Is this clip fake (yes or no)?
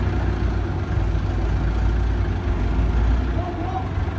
no